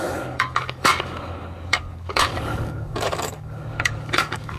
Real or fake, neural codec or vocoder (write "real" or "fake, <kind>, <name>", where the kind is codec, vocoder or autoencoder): fake, codec, DAC